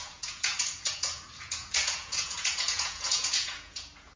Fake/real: fake